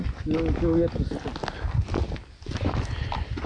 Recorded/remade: recorded